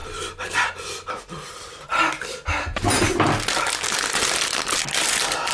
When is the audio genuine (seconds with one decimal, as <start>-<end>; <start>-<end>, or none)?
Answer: 0.0-5.5